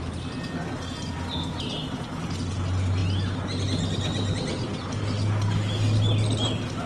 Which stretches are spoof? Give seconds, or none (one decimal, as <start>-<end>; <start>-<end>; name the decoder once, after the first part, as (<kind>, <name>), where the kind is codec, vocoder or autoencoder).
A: none